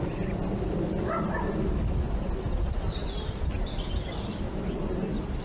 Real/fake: real